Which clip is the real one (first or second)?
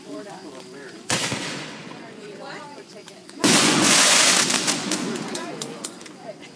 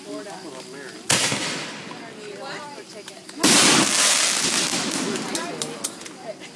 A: second